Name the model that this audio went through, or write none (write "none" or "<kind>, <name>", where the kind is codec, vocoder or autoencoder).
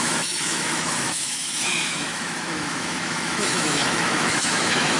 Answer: autoencoder, DAC-VAE